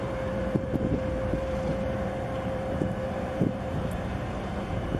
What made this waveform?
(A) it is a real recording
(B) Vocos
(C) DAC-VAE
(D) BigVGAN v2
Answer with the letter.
D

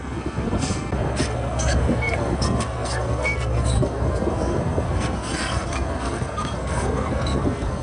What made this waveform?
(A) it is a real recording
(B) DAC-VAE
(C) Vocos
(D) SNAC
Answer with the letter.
D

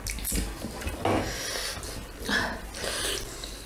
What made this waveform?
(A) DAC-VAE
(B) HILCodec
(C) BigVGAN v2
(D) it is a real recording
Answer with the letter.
D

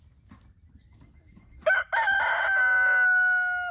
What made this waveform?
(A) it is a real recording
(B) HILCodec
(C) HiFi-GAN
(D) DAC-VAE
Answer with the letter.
A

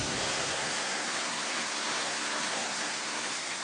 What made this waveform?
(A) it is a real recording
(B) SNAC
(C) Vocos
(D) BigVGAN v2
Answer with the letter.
B